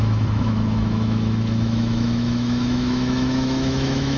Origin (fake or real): fake